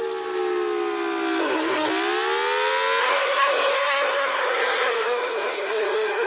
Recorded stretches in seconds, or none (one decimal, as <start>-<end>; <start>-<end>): 0.0-1.4; 1.9-3.0